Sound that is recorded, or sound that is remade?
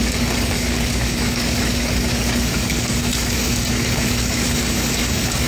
remade